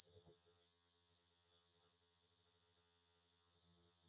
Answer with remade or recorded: remade